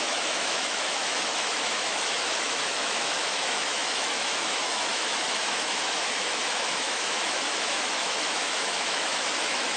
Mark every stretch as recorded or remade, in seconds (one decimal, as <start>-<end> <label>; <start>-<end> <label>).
0.0-9.8 remade